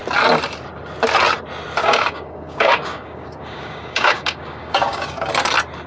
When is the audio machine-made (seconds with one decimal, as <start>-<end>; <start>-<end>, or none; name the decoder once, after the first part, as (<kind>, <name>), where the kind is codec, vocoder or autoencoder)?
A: 1.8-5.3 (codec, DAC)